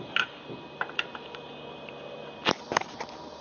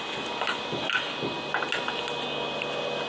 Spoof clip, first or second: first